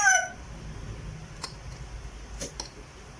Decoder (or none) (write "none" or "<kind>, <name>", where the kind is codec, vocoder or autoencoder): none